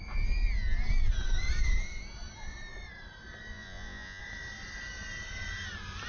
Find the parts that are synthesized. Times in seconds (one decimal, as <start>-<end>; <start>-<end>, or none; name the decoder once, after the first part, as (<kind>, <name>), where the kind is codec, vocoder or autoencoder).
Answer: 3.5-4.2 (vocoder, Vocos)